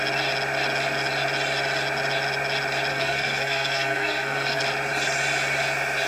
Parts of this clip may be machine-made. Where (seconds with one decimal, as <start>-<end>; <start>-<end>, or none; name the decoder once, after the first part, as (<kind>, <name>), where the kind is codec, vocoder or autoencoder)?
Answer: 2.9-4.6 (codec, SNAC)